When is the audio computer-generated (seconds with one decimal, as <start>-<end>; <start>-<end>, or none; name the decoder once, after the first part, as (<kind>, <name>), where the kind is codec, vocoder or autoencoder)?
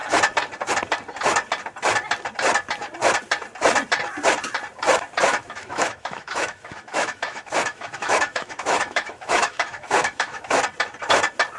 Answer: 5.3-10.6 (autoencoder, DAC-VAE)